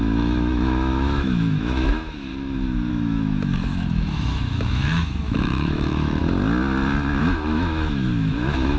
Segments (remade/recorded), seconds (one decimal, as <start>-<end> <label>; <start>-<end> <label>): 0.0-2.3 remade; 2.3-2.9 recorded; 2.9-6.2 remade; 6.2-7.2 recorded; 7.2-8.8 remade